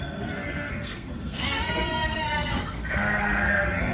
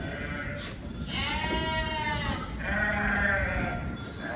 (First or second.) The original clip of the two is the second